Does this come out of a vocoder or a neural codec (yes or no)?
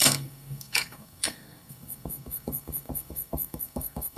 yes